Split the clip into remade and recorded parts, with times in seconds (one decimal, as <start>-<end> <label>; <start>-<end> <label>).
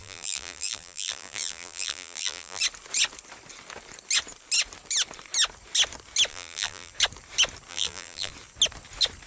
0.0-2.6 remade; 2.6-6.3 recorded; 6.3-6.9 remade; 6.9-7.7 recorded; 7.7-8.3 remade; 8.3-9.3 recorded